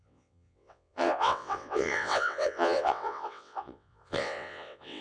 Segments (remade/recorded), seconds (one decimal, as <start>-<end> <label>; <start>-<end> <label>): 0.0-5.0 remade